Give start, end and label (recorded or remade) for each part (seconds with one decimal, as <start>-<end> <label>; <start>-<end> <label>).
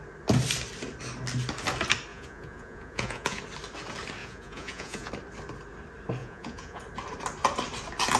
0.0-2.1 recorded; 2.1-3.4 remade; 3.4-4.2 recorded; 4.2-5.1 remade; 5.1-6.2 recorded; 6.2-6.8 remade; 6.8-8.2 recorded